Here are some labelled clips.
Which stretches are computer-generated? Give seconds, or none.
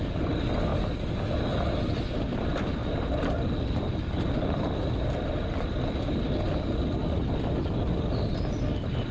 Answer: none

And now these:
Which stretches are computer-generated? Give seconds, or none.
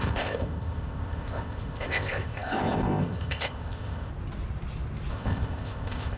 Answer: 0.0-4.1; 5.1-6.2